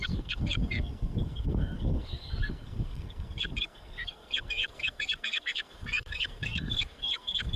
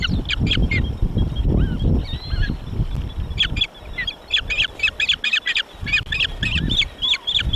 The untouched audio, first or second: second